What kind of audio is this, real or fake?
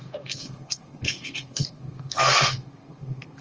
fake